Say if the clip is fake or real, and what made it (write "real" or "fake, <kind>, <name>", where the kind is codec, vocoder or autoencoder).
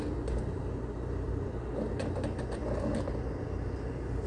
real